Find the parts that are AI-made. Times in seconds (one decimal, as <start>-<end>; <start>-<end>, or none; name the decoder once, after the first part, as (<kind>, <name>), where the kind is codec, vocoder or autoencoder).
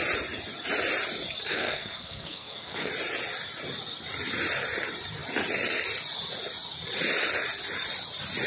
1.5-2.9 (codec, SNAC)